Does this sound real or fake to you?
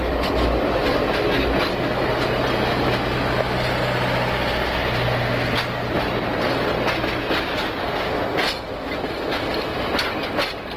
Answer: real